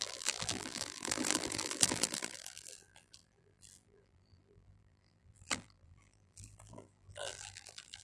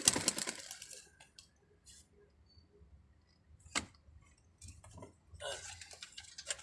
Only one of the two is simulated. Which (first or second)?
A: first